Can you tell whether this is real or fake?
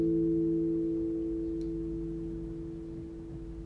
real